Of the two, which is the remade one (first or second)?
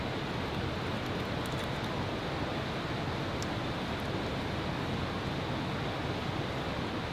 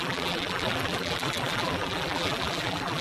second